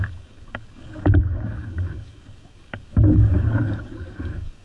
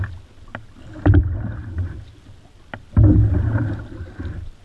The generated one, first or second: first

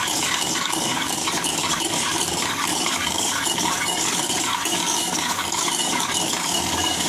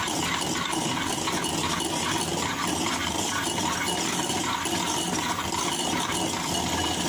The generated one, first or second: first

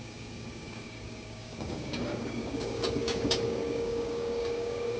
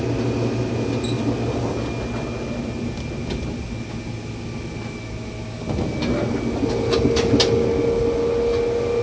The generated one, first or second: first